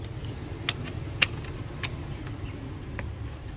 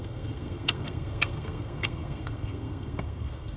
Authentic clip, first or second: first